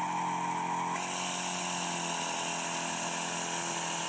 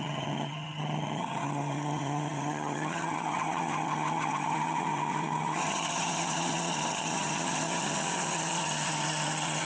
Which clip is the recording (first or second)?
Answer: first